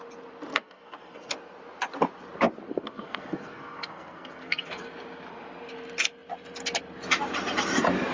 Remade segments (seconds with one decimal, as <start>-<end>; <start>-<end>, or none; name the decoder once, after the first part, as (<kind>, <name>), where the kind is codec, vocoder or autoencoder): 0.5-1.3 (codec, SNAC); 2.7-4.9